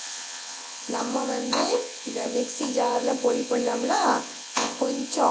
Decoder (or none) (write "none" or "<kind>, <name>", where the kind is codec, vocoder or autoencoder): vocoder, WaveNeXt